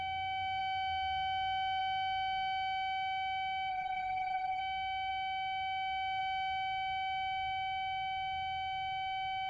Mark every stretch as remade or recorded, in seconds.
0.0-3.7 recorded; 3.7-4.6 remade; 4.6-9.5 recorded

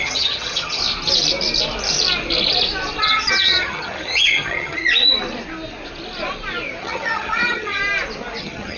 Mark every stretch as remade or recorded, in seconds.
0.0-0.8 remade; 0.8-3.0 recorded; 3.0-4.8 remade; 4.8-6.8 recorded; 6.8-7.8 remade; 7.8-8.4 recorded; 8.4-8.8 remade

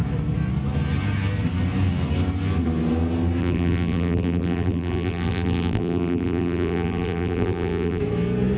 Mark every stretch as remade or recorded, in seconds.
0.0-3.4 recorded; 3.4-8.0 remade; 8.0-8.6 recorded

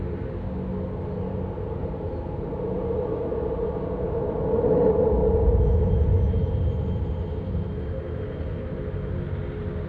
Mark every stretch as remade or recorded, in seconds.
0.0-9.9 recorded